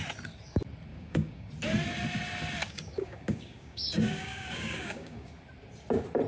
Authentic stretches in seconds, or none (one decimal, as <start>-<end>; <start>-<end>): 0.0-0.9; 1.5-2.6; 5.3-6.3